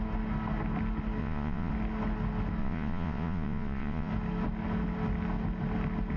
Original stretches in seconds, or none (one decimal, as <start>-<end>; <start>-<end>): 0.0-1.2; 1.7-2.6; 4.1-6.2